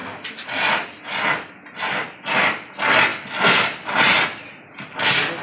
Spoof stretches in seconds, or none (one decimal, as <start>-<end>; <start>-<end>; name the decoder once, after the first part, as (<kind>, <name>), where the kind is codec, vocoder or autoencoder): none